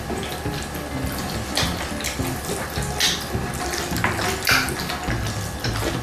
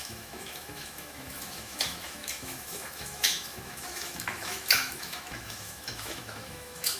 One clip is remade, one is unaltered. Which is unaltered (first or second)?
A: first